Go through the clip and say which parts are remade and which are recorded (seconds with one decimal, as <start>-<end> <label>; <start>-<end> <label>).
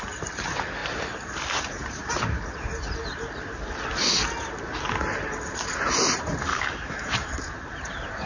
0.0-6.5 recorded; 6.5-7.4 remade; 7.4-8.3 recorded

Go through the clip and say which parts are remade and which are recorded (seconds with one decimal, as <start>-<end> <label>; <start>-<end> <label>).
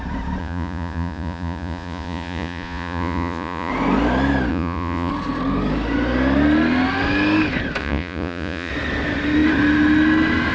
0.0-0.4 recorded; 0.4-3.7 remade; 3.7-4.5 recorded; 4.5-5.1 remade; 5.1-7.8 recorded; 7.8-8.7 remade; 8.7-10.5 recorded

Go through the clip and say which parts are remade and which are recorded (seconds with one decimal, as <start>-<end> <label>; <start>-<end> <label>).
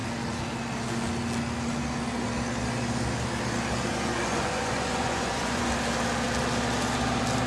0.0-3.9 recorded; 3.9-5.7 remade; 5.7-7.5 recorded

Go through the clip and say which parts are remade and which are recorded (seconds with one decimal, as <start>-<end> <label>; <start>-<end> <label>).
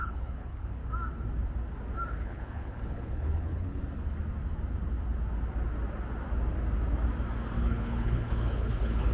0.0-0.8 remade; 0.8-2.2 recorded; 2.2-3.8 remade; 3.8-7.6 recorded; 7.6-9.1 remade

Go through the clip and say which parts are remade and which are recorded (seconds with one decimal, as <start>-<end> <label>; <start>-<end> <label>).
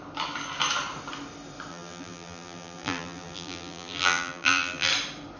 0.0-1.7 recorded; 1.7-4.9 remade; 4.9-5.4 recorded